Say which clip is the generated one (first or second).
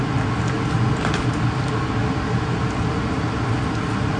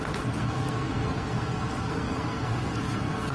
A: second